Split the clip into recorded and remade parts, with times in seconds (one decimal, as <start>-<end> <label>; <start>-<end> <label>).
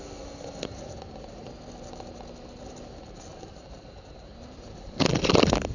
0.0-3.3 recorded; 3.3-5.1 remade; 5.1-5.7 recorded